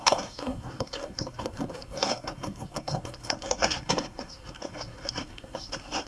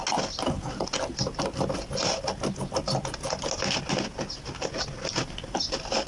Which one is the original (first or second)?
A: second